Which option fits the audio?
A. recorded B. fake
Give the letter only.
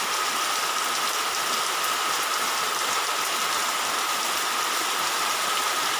A